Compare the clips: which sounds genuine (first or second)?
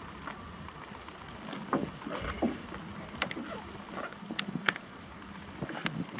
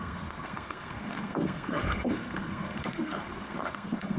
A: first